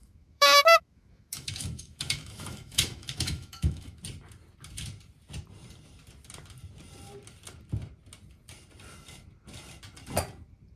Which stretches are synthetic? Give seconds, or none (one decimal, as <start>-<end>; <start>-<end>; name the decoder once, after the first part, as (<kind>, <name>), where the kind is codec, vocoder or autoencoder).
0.0-4.0 (autoencoder, DAC-VAE)